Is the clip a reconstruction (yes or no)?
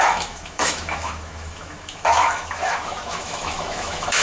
yes